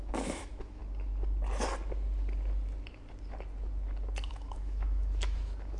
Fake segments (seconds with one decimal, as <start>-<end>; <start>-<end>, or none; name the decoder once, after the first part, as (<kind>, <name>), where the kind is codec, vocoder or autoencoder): 0.0-0.8 (autoencoder, DAC-VAE); 4.3-5.8